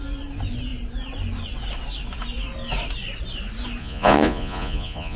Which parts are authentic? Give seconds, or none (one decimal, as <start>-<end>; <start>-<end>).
0.0-3.8